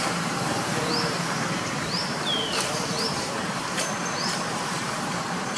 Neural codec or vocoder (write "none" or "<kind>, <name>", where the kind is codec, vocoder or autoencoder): vocoder, BigVGAN v2